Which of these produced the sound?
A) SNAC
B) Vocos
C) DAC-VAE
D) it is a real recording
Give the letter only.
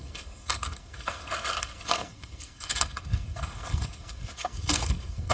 A